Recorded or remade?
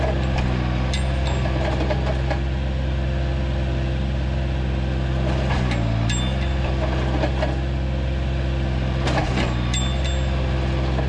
recorded